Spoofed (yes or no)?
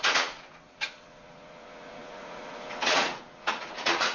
yes